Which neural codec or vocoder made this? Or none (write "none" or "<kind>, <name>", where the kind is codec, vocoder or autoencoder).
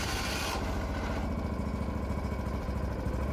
none